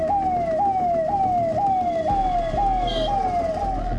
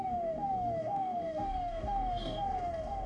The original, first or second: first